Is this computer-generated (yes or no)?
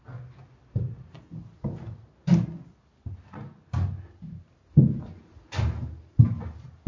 no